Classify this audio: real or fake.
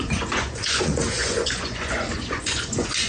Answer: fake